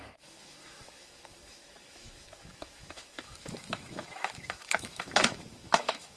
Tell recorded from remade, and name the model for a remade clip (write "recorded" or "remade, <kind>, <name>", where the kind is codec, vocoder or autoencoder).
remade, autoencoder, DAC-VAE